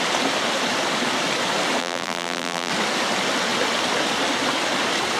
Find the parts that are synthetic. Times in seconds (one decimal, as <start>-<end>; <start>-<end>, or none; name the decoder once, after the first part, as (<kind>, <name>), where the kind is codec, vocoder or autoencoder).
1.8-2.7 (vocoder, BigVGAN v2)